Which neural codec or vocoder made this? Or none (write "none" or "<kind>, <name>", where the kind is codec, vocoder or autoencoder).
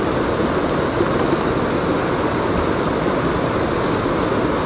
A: none